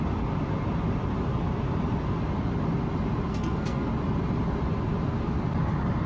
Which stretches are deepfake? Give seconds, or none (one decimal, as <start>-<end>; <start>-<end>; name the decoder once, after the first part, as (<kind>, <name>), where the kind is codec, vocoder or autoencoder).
3.3-3.9 (codec, SNAC)